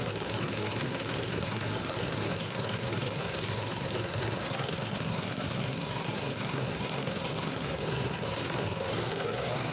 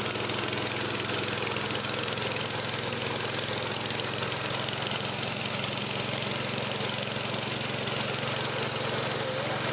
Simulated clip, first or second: first